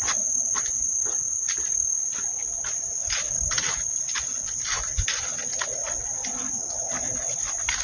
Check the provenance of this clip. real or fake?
real